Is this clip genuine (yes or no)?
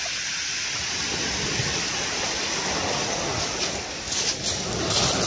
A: yes